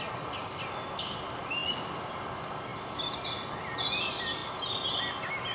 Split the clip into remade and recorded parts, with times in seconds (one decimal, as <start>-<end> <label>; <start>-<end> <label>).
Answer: 0.0-5.5 recorded